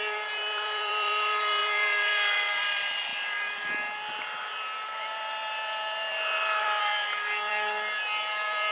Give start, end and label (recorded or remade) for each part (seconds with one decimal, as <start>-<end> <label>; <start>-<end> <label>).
0.0-8.7 remade